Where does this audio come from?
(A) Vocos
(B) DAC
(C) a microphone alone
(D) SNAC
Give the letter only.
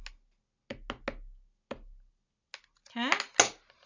C